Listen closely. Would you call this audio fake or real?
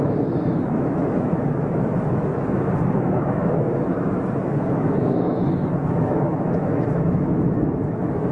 fake